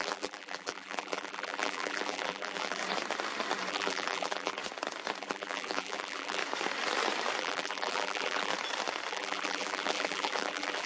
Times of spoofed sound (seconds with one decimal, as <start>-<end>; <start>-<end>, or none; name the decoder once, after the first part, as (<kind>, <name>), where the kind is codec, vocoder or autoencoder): 0.0-2.8 (vocoder, BigVGAN v2); 3.7-4.6; 5.2-6.4; 7.4-8.5; 9.1-10.9